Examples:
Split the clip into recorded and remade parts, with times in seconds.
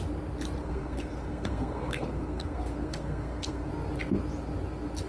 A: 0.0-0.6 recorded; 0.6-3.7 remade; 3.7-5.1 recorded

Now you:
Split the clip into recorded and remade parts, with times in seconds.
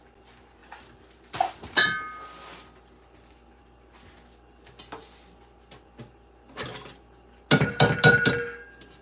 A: 0.0-9.0 recorded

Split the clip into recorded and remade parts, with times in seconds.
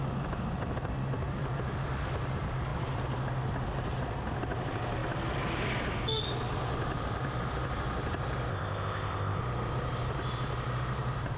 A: 0.0-8.5 recorded; 8.5-9.4 remade; 9.4-11.4 recorded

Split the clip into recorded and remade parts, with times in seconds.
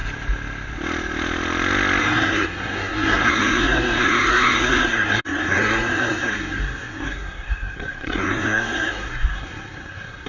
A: 0.0-2.0 recorded; 2.0-10.3 remade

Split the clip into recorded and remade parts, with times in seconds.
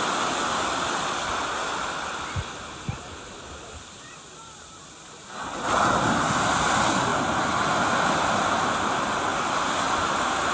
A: 0.0-1.6 remade; 1.6-5.3 recorded; 5.3-7.1 remade; 7.1-7.7 recorded; 7.7-9.3 remade; 9.3-10.5 recorded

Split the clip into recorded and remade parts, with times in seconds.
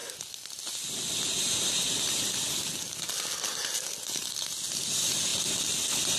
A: 0.0-6.2 recorded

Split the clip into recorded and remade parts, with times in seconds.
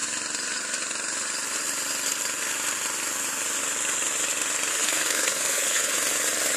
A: 0.0-4.7 recorded; 4.7-5.9 remade; 5.9-6.6 recorded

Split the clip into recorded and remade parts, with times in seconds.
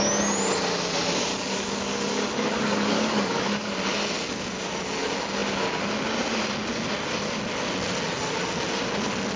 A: 0.0-1.3 recorded; 1.3-3.7 remade; 3.7-9.4 recorded